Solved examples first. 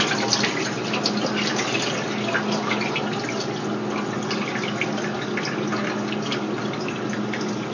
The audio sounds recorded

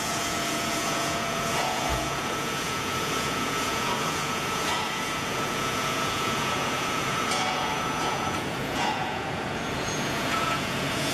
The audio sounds remade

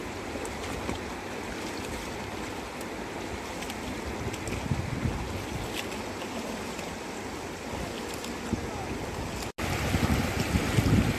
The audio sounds recorded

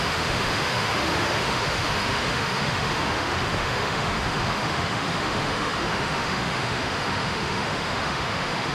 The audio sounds remade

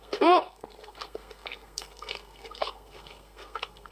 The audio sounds remade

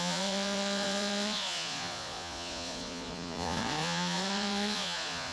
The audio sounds remade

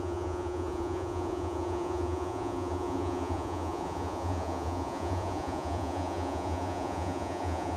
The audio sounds remade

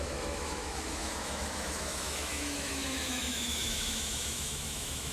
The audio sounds remade